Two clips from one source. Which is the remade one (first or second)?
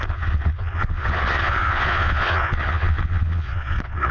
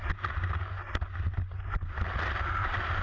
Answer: first